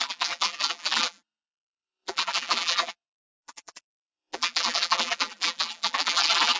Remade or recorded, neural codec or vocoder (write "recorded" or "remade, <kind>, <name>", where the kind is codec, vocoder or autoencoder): remade, vocoder, BigVGAN v2